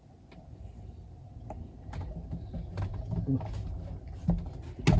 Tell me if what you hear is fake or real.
real